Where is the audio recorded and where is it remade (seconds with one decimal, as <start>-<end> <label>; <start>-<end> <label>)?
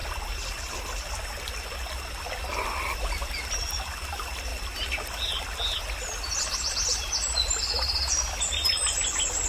0.0-9.5 recorded